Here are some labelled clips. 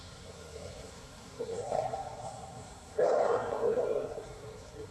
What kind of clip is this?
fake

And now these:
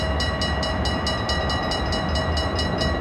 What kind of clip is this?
real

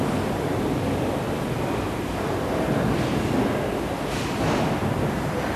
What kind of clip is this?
real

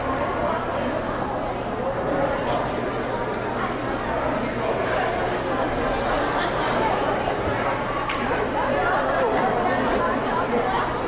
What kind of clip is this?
real